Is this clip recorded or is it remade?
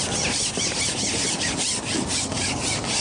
recorded